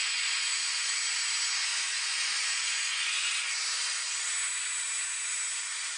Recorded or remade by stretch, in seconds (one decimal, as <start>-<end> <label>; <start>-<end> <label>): 0.0-0.9 remade; 0.9-1.7 recorded; 1.7-3.5 remade; 3.5-6.0 recorded